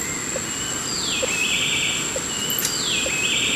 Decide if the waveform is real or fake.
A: real